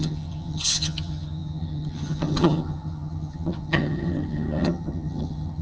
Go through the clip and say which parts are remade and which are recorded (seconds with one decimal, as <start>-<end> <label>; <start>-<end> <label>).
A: 0.0-5.6 remade